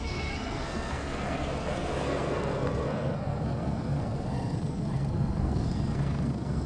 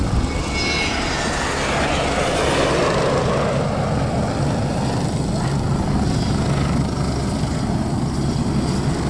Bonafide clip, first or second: second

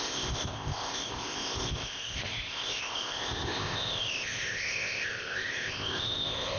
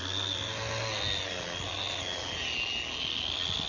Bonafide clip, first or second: second